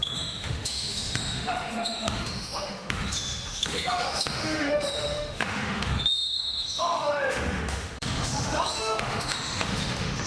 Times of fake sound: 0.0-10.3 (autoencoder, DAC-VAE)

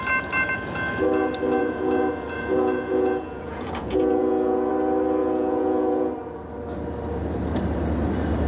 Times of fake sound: 1.6-4.7 (vocoder, Vocos); 5.2-6.1

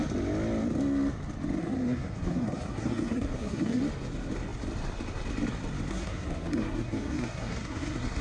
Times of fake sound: 1.6-3.8 (codec, SNAC); 5.9-8.2

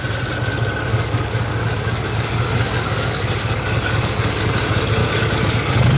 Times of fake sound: 0.9-4.5 (codec, DAC); 5.0-6.0

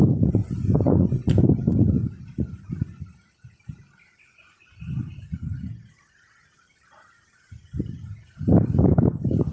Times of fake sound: 0.4-1.4 (vocoder, Vocos); 4.3-5.7

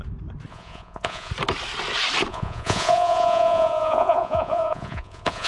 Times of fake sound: 0.5-1.3 (vocoder, Vocos); 2.3-5.5

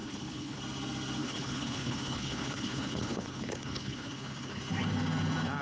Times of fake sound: 0.0-0.6 (codec, HILCodec); 1.2-4.6

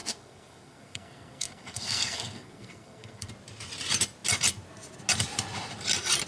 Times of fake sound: 0.0-3.3 (codec, SNAC)